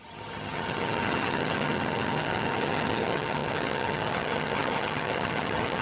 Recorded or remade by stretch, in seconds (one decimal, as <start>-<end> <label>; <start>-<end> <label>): 0.0-5.8 remade